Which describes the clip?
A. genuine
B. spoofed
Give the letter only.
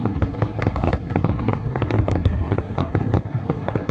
B